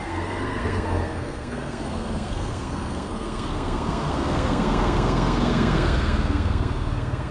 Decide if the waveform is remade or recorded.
remade